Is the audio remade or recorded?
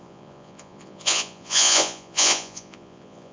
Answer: remade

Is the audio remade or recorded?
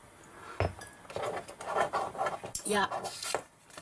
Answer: recorded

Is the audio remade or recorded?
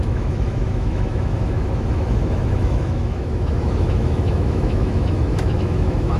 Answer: remade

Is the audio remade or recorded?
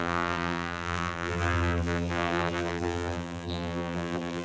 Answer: remade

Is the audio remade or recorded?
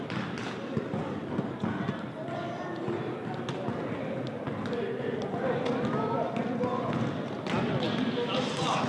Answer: recorded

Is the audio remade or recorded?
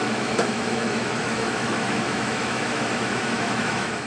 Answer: remade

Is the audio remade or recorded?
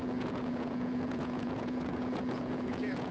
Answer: remade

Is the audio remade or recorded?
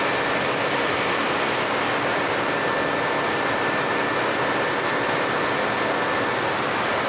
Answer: recorded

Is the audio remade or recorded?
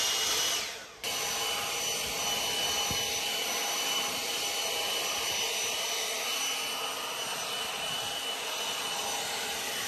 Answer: recorded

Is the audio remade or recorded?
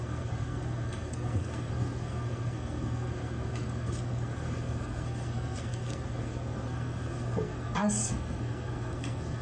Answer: remade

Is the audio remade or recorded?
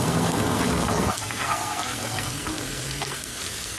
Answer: remade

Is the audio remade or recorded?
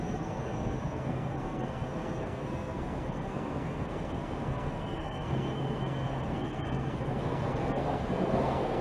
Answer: remade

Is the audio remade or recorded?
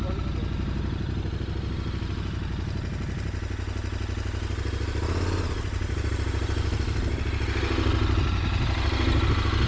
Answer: recorded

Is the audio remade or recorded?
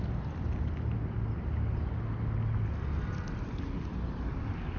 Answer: recorded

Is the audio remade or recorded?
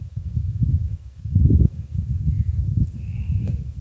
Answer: remade